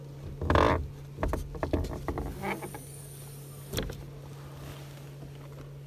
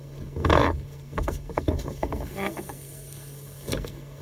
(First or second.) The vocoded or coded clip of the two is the second